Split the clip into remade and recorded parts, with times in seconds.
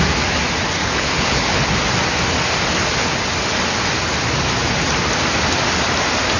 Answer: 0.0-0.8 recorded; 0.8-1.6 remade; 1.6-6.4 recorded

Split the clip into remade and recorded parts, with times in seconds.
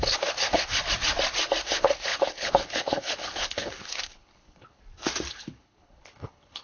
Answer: 0.0-0.7 remade; 0.7-1.6 recorded; 1.6-4.8 remade; 4.8-5.3 recorded; 5.3-6.6 remade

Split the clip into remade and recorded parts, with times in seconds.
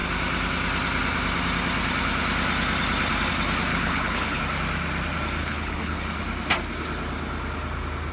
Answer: 0.0-3.7 recorded; 3.7-4.4 remade; 4.4-5.4 recorded; 5.4-6.0 remade; 6.0-8.1 recorded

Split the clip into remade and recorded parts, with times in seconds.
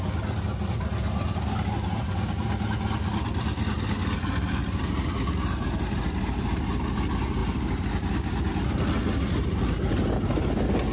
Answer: 0.0-10.9 recorded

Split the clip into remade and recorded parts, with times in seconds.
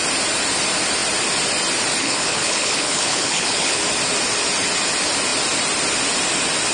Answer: 0.0-2.0 recorded; 2.0-3.8 remade; 3.8-6.7 recorded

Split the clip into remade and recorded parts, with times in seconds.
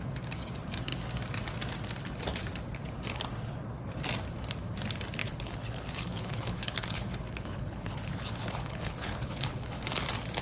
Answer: 0.0-5.2 recorded; 5.2-9.9 remade; 9.9-10.4 recorded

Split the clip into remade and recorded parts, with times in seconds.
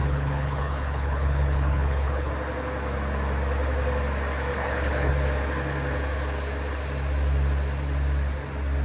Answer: 0.0-2.3 remade; 2.3-4.5 recorded; 4.5-5.1 remade; 5.1-8.8 recorded